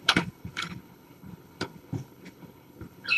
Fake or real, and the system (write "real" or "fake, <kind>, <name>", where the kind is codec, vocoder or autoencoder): fake, codec, HILCodec